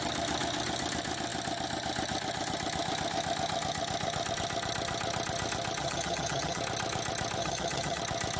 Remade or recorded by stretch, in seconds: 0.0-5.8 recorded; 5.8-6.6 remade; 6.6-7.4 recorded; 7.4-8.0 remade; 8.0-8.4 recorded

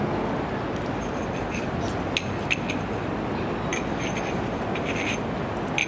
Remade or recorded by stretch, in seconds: 0.0-5.9 recorded

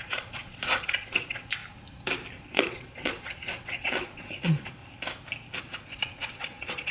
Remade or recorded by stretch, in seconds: 0.0-1.6 remade; 1.6-2.4 recorded; 2.4-4.8 remade; 4.8-5.6 recorded; 5.6-6.9 remade

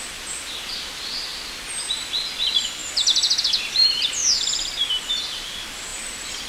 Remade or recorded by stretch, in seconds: 0.0-2.8 remade; 2.8-3.4 recorded; 3.4-4.2 remade; 4.2-5.2 recorded; 5.2-6.5 remade